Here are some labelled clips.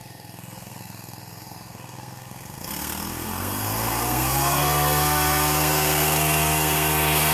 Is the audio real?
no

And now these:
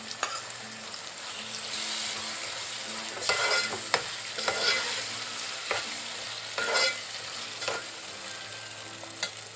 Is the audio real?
yes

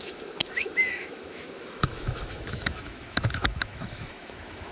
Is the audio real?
no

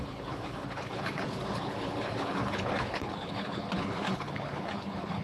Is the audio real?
no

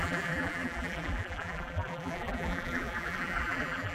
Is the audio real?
no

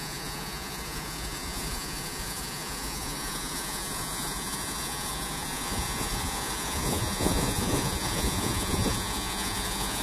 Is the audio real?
no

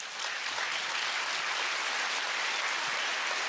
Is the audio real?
yes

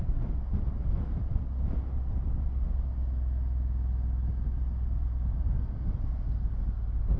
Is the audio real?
yes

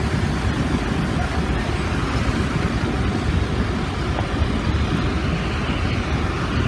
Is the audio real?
yes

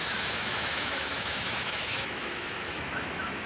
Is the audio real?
no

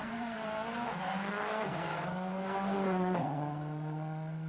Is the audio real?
no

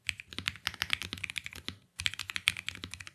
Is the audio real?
yes